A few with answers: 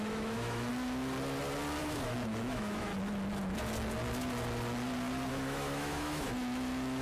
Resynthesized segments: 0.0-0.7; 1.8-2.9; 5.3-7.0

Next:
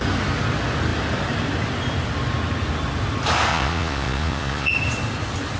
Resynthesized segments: 3.5-4.7

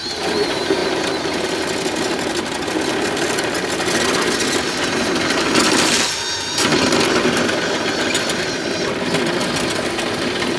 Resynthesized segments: none

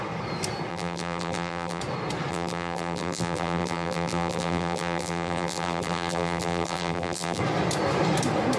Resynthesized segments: 0.7-1.8; 2.3-7.4

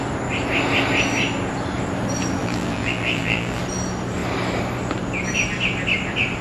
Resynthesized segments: 2.4-3.6

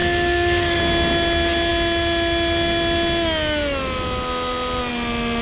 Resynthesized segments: 0.0-0.8

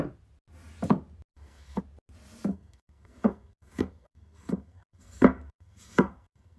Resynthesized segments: 1.3-1.8; 2.5-6.6